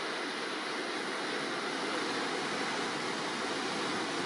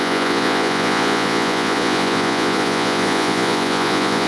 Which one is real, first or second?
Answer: first